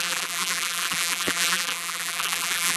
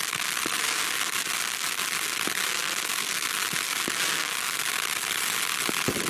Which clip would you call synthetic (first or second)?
first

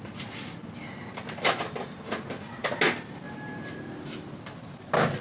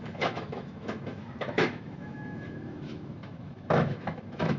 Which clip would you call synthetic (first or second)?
second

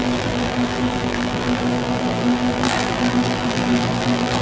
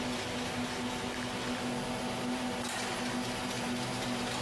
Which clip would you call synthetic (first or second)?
first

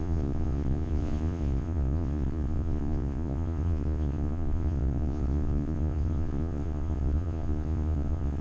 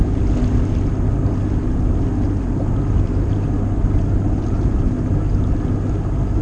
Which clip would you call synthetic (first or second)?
first